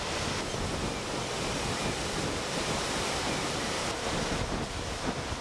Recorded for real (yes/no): yes